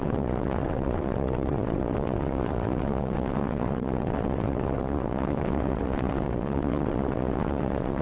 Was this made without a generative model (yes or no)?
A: no